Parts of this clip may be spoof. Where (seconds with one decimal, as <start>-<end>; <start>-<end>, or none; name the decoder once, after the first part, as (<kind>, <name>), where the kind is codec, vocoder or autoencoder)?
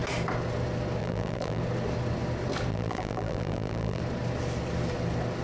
1.0-1.6 (vocoder, BigVGAN v2); 2.7-4.0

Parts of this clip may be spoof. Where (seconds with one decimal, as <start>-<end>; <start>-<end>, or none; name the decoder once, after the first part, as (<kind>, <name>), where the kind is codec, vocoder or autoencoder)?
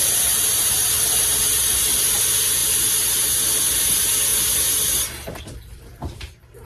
0.0-2.6 (vocoder, BigVGAN v2); 3.8-4.3; 5.4-6.7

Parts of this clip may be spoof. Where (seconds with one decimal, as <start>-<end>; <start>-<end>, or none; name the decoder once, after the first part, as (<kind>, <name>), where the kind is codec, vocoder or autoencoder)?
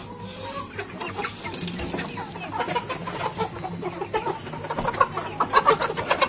0.0-1.8 (vocoder, BigVGAN v2)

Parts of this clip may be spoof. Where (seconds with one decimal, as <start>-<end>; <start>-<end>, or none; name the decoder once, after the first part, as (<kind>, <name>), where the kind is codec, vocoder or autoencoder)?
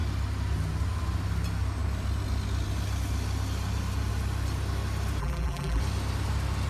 5.2-5.8 (vocoder, BigVGAN v2)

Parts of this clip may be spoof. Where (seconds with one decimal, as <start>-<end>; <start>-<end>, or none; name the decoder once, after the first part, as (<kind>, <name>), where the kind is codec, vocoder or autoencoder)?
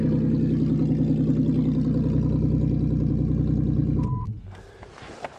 3.8-5.4 (vocoder, BigVGAN v2)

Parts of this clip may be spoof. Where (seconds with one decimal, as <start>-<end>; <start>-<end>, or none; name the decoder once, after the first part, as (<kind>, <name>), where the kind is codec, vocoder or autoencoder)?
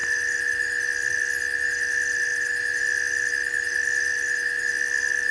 none